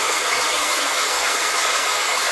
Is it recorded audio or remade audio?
remade